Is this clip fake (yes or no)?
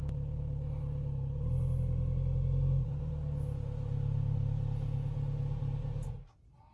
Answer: no